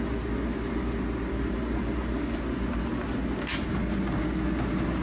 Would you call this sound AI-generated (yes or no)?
no